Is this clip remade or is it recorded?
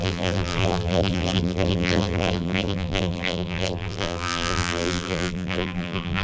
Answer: remade